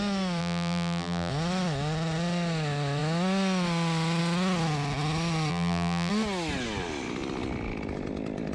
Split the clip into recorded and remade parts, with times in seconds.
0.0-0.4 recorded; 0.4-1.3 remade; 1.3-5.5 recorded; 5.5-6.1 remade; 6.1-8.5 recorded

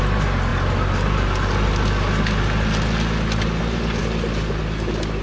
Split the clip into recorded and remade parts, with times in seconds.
0.0-5.2 recorded

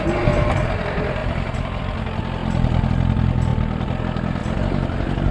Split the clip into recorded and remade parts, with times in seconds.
0.0-1.2 recorded; 1.2-1.8 remade; 1.8-2.4 recorded; 2.4-2.9 remade; 2.9-3.5 recorded; 3.5-4.0 remade; 4.0-5.3 recorded

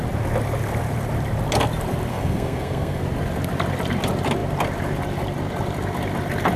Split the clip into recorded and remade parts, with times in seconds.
0.0-2.1 recorded; 2.1-3.0 remade; 3.0-6.6 recorded